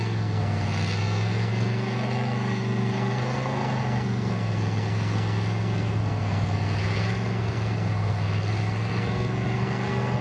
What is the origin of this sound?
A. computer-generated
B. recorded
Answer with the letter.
A